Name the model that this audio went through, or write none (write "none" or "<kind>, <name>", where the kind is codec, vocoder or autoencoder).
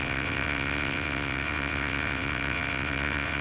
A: vocoder, WaveNeXt